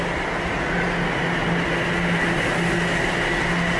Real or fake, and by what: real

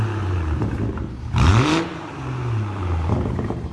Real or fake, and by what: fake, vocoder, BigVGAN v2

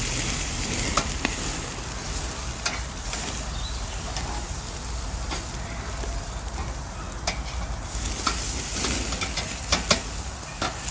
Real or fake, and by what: real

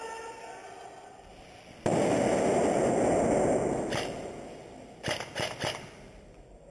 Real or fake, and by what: real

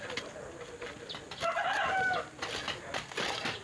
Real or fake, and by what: real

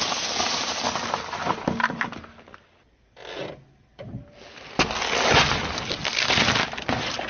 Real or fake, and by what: real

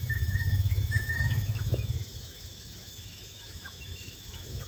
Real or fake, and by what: fake, autoencoder, DAC-VAE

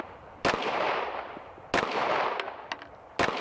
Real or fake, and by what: real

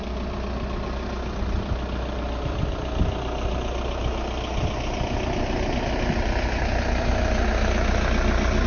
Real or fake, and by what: real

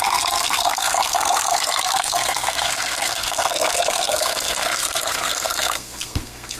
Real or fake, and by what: fake, codec, SNAC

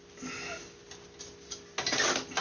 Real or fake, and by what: real